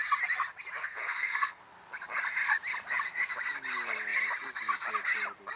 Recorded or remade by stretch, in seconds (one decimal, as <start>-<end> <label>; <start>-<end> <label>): 0.0-0.8 recorded; 0.8-1.6 remade; 1.6-5.6 recorded